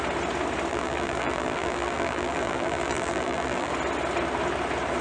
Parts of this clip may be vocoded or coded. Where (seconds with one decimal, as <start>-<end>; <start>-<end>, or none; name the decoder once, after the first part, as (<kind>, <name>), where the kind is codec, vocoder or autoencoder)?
0.7-3.7 (vocoder, BigVGAN v2)